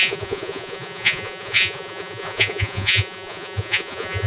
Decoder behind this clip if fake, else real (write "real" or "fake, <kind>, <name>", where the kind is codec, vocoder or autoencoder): fake, vocoder, Vocos